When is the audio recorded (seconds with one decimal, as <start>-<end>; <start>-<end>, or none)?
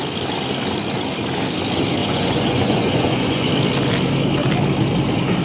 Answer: 0.0-2.0; 3.5-5.4